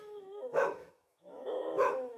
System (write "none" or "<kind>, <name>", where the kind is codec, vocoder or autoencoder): autoencoder, DAC-VAE